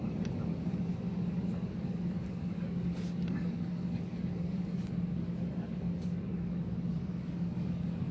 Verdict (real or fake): fake